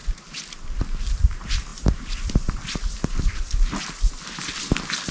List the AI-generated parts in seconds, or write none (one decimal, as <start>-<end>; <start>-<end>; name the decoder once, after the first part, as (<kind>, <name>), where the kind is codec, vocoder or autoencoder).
0.6-5.1 (vocoder, BigVGAN v2)